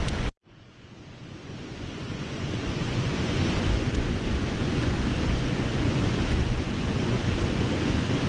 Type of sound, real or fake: fake